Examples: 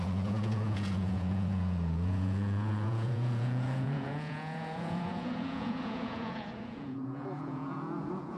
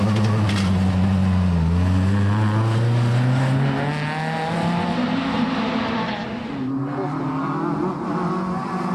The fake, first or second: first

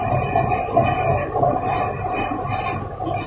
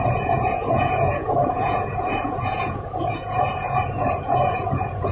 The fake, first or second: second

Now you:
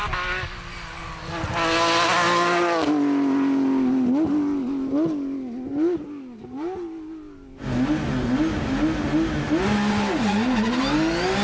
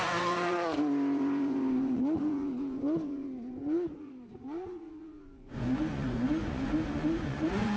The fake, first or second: second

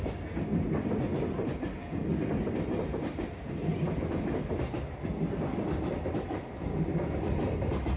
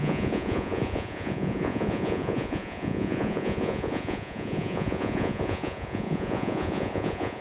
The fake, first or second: second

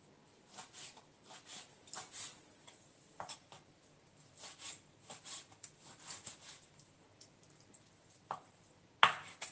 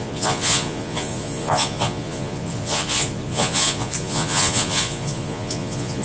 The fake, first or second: second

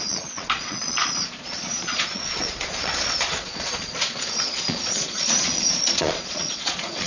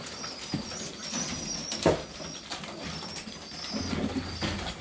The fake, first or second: first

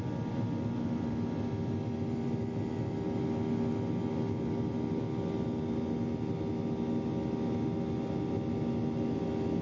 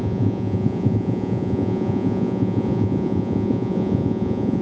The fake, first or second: second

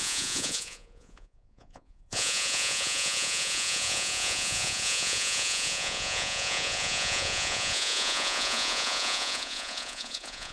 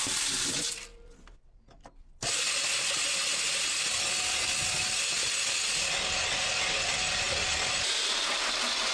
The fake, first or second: first